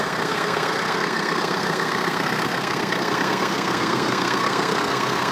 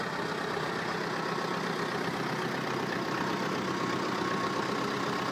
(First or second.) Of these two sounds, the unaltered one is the second